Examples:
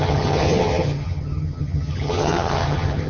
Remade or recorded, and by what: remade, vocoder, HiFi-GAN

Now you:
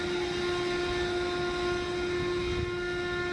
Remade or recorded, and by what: recorded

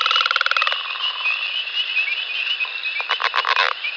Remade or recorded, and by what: recorded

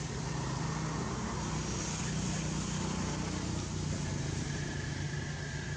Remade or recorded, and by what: recorded